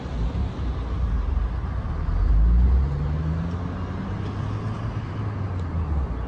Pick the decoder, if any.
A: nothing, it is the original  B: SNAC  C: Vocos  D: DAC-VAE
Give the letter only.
A